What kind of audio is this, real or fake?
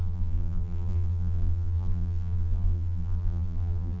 fake